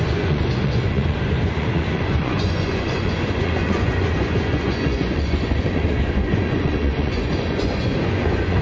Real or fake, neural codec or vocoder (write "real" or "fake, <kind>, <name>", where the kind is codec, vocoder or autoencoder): fake, vocoder, Vocos